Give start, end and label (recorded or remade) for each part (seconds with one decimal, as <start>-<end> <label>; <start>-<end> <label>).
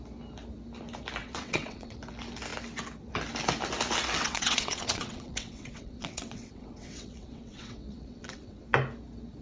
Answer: 0.0-1.2 recorded; 1.2-2.0 remade; 2.0-4.2 recorded; 4.2-8.6 remade; 8.6-9.4 recorded